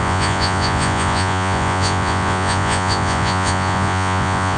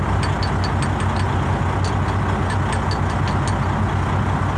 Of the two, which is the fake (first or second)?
first